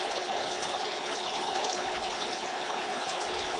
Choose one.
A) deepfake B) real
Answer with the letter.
A